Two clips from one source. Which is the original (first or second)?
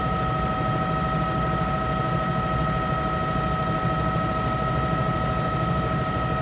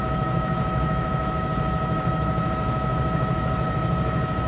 first